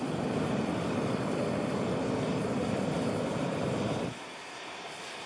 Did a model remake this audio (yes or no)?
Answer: yes